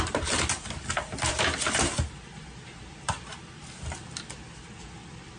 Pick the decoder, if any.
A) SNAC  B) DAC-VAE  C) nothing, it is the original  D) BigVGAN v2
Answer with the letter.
D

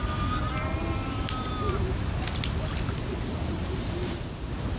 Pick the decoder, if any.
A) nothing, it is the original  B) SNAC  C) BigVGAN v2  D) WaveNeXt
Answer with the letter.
A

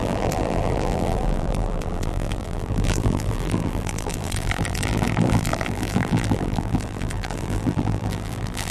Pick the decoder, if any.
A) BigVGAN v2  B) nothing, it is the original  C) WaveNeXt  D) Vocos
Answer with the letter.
A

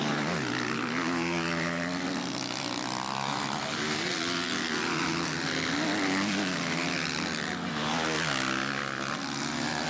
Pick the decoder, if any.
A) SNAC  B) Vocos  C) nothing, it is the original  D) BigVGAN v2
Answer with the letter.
C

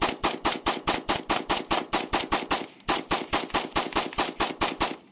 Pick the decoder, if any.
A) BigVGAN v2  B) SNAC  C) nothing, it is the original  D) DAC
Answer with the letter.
A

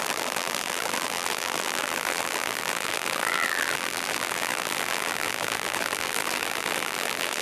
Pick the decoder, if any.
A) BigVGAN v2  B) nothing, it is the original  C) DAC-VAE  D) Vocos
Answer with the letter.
A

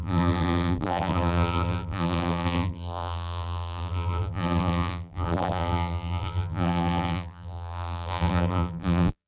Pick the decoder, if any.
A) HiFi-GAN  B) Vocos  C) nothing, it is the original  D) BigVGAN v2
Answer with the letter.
D